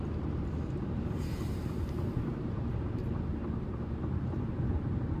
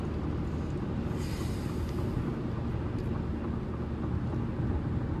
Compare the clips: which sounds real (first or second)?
second